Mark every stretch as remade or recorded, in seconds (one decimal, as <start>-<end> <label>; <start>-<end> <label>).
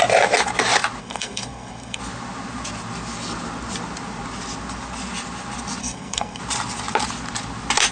0.0-1.0 recorded; 1.0-2.0 remade; 2.0-5.8 recorded; 5.8-6.4 remade; 6.4-7.9 recorded